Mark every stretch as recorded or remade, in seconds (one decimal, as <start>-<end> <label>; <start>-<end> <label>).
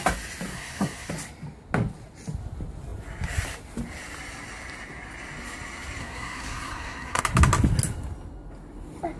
0.0-0.5 recorded; 0.5-1.1 remade; 1.1-6.0 recorded; 6.0-7.2 remade; 7.2-9.2 recorded